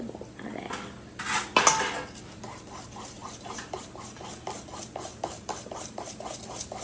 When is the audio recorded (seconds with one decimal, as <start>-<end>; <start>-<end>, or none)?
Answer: 0.0-3.2; 3.9-5.1; 6.1-6.8

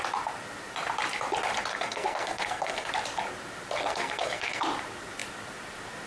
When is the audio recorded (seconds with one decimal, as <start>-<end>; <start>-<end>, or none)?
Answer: 0.0-1.7; 2.9-3.8; 4.6-6.1

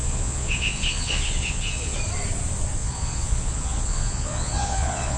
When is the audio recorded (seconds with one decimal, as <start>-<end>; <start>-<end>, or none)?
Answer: 2.0-2.8

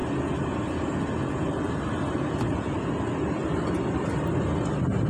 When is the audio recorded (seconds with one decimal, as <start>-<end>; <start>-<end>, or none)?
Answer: 0.0-5.1